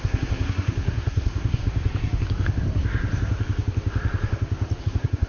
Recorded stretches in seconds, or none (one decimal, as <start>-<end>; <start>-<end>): 1.6-4.8